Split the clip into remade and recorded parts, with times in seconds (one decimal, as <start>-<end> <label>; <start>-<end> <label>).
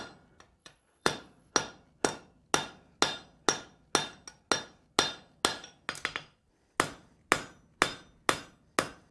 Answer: 0.0-0.6 recorded; 0.6-1.5 remade; 1.5-9.1 recorded